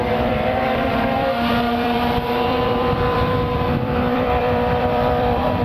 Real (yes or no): no